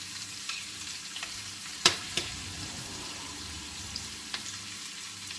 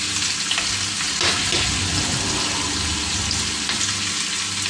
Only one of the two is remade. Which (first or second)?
first